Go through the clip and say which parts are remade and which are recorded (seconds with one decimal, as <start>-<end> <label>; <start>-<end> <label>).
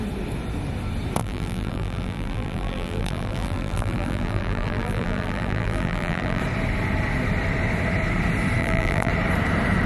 0.0-1.2 recorded; 1.2-6.4 remade; 6.4-8.6 recorded; 8.6-9.1 remade; 9.1-9.9 recorded